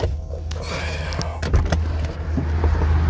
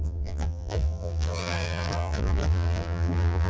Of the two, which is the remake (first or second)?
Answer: second